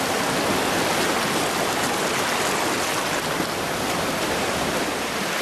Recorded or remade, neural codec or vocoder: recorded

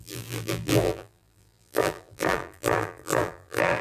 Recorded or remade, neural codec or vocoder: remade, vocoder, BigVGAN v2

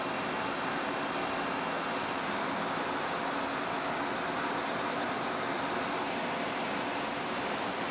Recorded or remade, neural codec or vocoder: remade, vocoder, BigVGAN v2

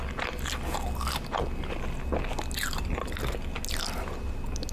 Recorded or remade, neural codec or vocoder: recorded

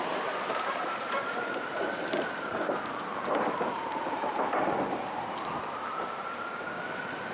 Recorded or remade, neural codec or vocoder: remade, vocoder, BigVGAN v2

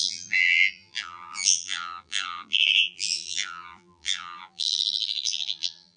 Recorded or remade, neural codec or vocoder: remade, vocoder, BigVGAN v2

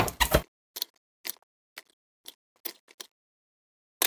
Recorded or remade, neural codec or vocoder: recorded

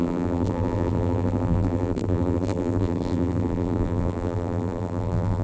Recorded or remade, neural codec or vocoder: remade, vocoder, BigVGAN v2